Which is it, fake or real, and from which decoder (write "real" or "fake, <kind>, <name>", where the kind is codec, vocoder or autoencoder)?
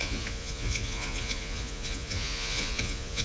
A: fake, vocoder, Vocos